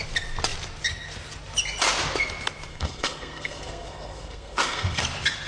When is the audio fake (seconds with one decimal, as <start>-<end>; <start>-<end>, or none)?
2.7-5.0